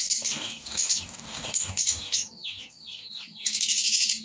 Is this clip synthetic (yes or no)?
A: yes